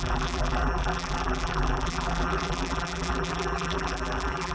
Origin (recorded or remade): remade